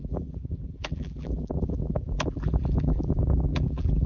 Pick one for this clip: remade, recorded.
remade